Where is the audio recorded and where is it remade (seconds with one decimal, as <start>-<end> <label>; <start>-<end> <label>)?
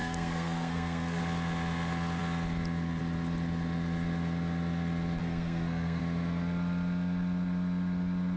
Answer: 0.0-1.2 remade; 1.2-5.2 recorded; 5.2-6.0 remade; 6.0-8.4 recorded